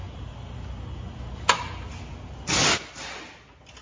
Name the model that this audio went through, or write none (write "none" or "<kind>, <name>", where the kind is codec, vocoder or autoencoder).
none